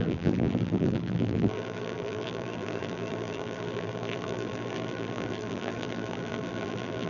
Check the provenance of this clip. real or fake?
fake